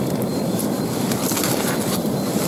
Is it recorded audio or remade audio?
recorded